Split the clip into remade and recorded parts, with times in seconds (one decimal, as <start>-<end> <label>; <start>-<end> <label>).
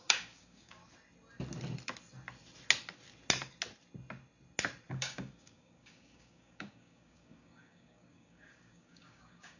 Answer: 0.0-0.8 remade; 0.8-4.9 recorded; 4.9-9.6 remade